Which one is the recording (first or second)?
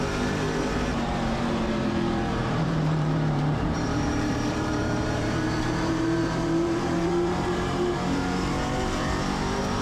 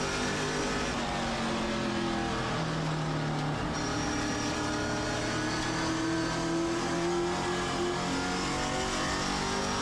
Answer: second